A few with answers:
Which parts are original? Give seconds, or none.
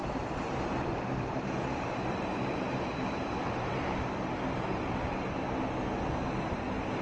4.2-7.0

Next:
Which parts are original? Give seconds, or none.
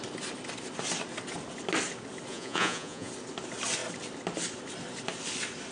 0.0-2.3; 3.1-5.7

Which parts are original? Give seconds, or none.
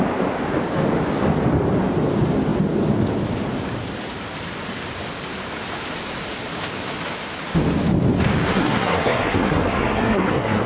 0.0-8.5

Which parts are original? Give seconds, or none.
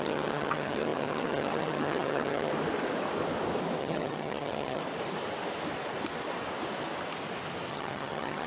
2.5-3.8; 4.8-7.7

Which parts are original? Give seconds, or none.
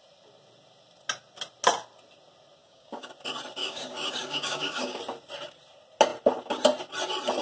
0.0-2.6; 3.1-3.6; 5.0-7.4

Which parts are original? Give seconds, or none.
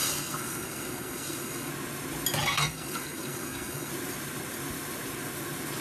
1.7-2.4; 3.9-5.8